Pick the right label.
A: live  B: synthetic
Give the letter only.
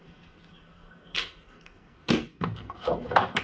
B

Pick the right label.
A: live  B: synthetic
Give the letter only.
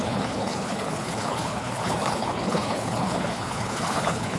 B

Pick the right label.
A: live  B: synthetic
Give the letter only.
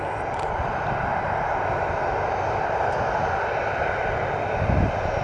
A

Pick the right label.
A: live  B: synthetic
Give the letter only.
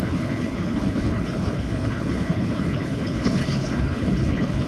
B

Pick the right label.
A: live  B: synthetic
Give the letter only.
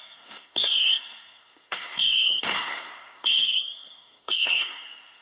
B